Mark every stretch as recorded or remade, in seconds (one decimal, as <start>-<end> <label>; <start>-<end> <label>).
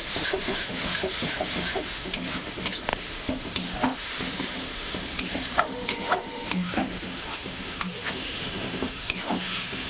0.0-9.9 remade